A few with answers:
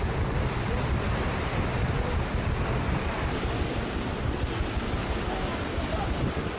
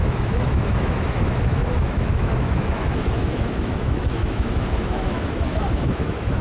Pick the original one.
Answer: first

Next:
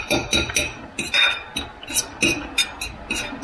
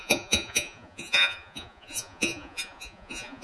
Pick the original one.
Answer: first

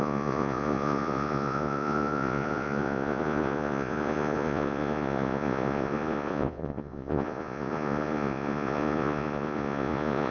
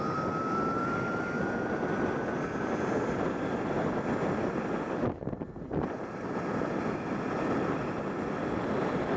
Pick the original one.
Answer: second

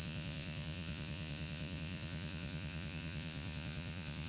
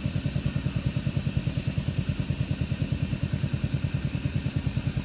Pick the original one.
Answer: second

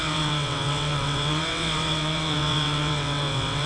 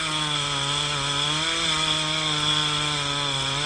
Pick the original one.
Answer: second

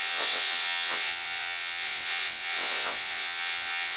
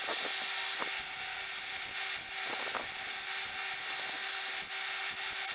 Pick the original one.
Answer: second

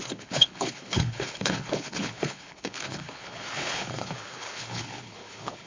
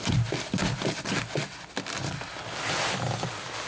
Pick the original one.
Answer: second